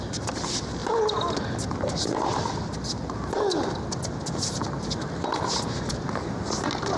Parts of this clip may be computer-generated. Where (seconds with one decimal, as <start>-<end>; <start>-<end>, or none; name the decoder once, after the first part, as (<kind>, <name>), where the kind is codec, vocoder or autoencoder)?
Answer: none